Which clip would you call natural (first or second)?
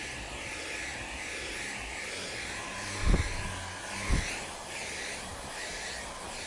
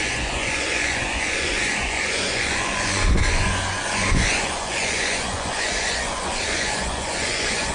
first